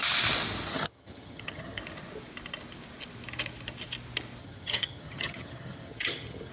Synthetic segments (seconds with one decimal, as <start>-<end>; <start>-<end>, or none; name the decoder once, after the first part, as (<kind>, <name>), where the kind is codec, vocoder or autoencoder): 0.7-1.8 (vocoder, HiFi-GAN); 4.4-6.5